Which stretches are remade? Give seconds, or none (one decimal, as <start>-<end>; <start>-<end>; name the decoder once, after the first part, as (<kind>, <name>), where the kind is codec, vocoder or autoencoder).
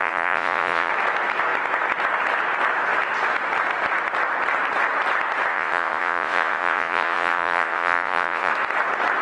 0.0-0.9 (vocoder, Vocos); 5.5-8.5